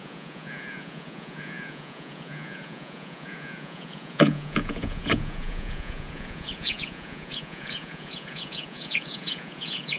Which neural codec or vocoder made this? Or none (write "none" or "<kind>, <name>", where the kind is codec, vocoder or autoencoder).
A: vocoder, Vocos